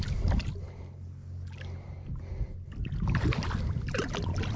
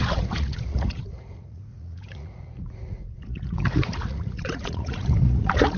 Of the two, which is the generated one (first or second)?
second